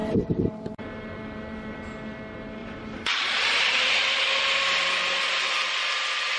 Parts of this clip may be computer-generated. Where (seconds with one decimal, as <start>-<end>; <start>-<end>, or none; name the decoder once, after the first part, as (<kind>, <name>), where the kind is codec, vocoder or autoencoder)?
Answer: 0.0-1.8 (vocoder, BigVGAN v2); 2.6-3.9